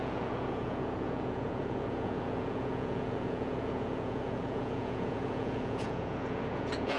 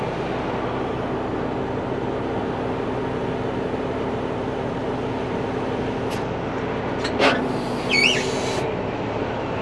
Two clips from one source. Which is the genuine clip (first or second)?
second